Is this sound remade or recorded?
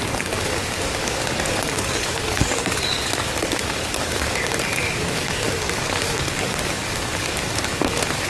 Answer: remade